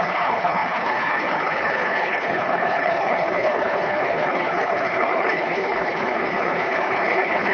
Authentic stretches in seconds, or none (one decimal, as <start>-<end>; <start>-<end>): none